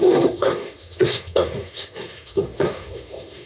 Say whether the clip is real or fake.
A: fake